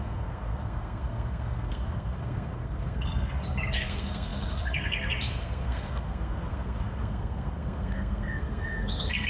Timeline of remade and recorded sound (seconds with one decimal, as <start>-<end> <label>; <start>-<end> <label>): 0.0-9.3 remade